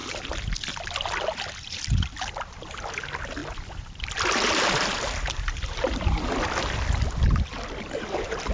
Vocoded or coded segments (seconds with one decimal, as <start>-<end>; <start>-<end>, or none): 3.4-4.1